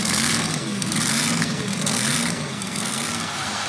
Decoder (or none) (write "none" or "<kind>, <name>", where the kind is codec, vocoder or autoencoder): codec, SNAC